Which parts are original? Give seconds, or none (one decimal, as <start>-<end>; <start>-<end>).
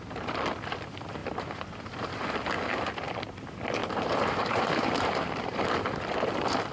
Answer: 0.0-3.8; 5.7-6.7